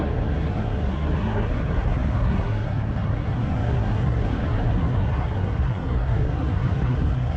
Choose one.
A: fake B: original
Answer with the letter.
A